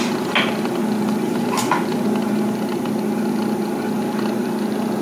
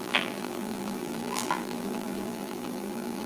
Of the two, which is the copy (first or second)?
second